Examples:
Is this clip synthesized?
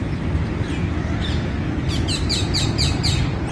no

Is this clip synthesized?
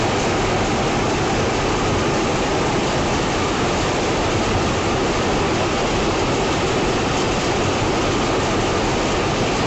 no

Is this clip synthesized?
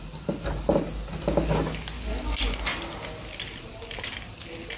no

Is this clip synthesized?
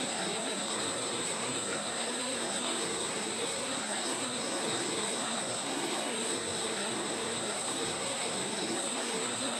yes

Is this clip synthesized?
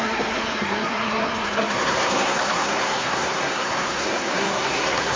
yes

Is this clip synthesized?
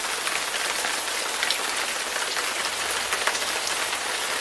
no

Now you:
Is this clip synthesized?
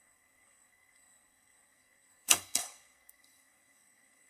yes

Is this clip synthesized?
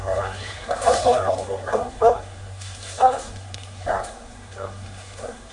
yes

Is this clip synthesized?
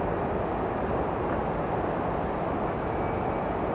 no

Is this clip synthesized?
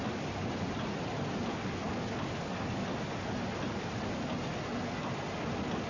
no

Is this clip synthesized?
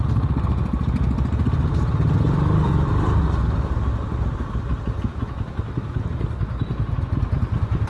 no